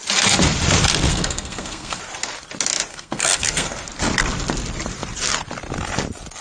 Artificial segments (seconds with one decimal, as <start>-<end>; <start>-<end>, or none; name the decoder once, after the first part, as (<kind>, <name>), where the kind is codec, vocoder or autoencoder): 1.1-2.0 (codec, SNAC); 2.9-3.8